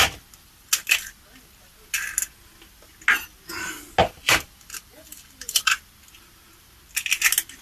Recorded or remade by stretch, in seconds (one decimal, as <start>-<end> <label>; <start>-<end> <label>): 0.0-4.0 recorded; 4.0-5.6 remade; 5.6-7.6 recorded